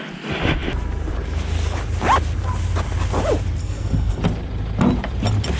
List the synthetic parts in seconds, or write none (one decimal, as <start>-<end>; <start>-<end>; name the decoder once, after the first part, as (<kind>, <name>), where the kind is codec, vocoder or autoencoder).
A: 3.6-4.2 (codec, SNAC)